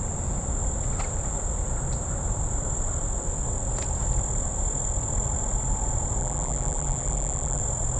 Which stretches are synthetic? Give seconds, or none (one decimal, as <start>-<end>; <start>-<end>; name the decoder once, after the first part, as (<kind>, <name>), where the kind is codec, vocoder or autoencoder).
6.2-7.6 (vocoder, BigVGAN v2)